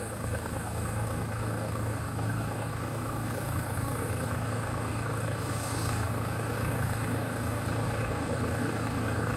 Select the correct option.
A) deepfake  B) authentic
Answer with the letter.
A